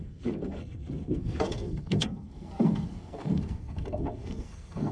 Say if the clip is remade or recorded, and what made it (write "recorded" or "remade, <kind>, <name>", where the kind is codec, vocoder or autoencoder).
remade, codec, SNAC